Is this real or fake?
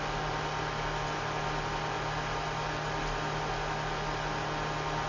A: real